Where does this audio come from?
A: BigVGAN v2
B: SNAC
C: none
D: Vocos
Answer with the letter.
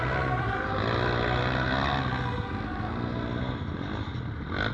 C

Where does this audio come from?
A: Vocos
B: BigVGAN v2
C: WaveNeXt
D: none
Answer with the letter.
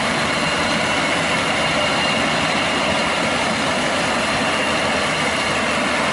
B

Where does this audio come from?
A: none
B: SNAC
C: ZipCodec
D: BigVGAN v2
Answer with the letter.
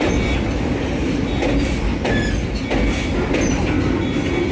A